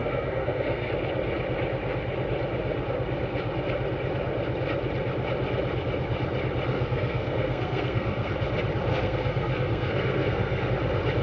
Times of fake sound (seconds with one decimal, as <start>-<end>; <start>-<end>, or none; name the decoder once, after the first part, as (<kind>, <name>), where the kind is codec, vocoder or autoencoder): 0.0-0.9 (codec, SNAC); 6.7-8.3; 8.9-10.7